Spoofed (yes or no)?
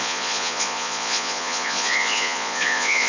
yes